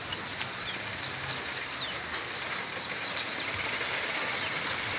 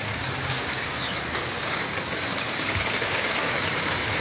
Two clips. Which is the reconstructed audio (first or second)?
second